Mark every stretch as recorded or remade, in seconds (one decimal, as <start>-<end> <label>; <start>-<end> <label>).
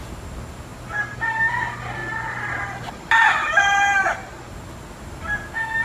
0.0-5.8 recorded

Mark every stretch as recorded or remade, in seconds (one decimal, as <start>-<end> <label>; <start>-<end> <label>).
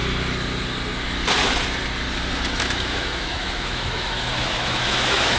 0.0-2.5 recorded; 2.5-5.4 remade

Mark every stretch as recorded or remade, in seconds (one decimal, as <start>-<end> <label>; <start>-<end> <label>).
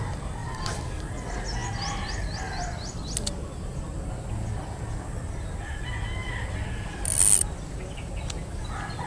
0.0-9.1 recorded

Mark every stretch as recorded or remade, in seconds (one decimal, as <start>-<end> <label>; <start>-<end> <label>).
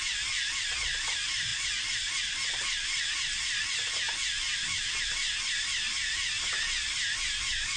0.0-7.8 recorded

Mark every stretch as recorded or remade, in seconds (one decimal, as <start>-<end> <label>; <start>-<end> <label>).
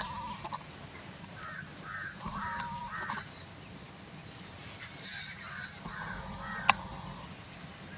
0.0-8.0 recorded